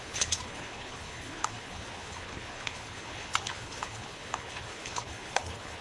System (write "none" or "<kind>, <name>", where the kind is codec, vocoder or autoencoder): codec, HILCodec